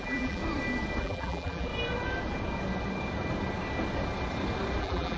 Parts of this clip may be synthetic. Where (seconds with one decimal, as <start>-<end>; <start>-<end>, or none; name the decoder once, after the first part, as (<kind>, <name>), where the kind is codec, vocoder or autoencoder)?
0.0-0.4 (vocoder, BigVGAN v2); 1.0-1.7; 4.8-5.2